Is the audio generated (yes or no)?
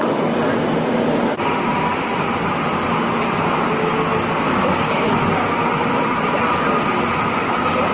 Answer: no